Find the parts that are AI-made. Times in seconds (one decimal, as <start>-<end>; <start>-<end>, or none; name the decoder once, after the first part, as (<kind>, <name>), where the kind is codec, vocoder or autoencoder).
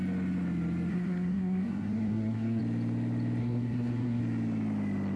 0.9-2.6 (codec, SNAC); 3.4-4.2